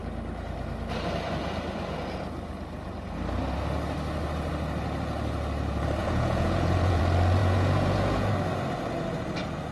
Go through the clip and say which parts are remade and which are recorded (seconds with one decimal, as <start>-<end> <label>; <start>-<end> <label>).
0.0-6.0 recorded; 6.0-7.0 remade; 7.0-7.4 recorded; 7.4-8.3 remade; 8.3-9.7 recorded